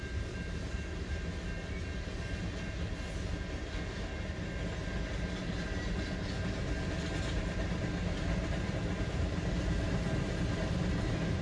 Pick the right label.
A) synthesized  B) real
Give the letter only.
B